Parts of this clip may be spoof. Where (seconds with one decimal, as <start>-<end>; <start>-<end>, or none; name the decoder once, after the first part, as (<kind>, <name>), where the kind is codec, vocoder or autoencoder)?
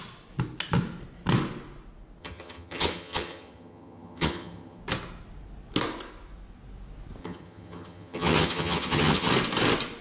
2.2-4.8 (vocoder, HiFi-GAN); 7.2-9.3